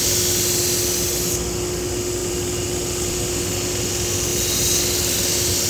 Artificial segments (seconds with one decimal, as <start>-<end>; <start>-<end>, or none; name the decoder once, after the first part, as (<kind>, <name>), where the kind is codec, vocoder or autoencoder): none